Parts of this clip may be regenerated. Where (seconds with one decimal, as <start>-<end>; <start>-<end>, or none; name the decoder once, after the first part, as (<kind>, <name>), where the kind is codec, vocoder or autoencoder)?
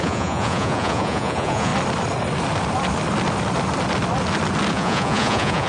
0.0-1.7 (vocoder, Vocos); 4.7-5.7